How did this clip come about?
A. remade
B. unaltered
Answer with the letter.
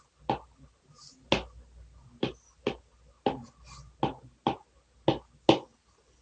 B